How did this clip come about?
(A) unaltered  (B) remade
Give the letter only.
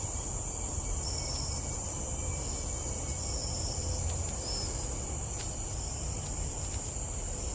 A